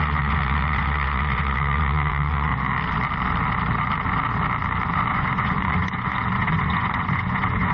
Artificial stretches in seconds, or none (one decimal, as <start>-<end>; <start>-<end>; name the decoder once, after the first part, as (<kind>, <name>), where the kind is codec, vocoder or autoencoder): 0.0-2.5 (vocoder, Vocos); 5.1-7.7